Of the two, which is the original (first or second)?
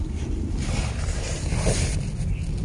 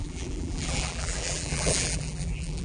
first